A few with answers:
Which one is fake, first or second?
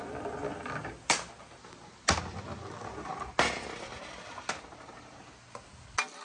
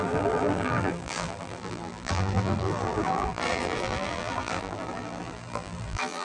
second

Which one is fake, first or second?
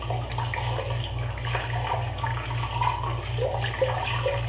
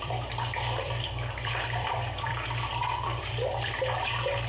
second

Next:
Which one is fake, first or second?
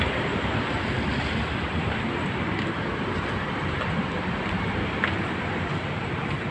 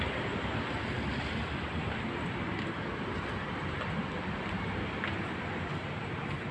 first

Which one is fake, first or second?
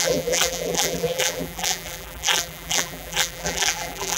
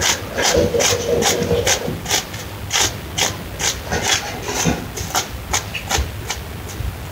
first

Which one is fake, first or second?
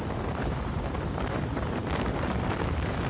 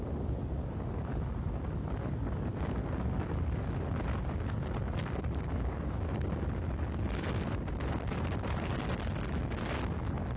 first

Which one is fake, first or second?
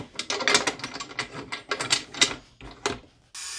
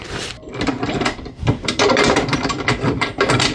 second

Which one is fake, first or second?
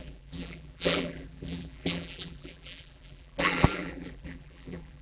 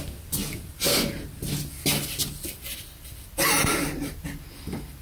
first